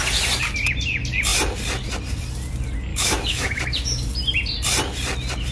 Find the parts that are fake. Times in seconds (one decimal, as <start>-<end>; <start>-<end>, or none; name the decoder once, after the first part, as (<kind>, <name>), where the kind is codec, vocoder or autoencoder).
2.9-3.6 (autoencoder, DAC-VAE)